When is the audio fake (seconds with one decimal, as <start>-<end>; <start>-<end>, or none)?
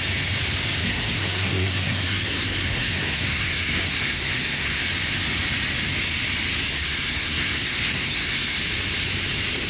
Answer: 0.8-4.8; 6.7-8.6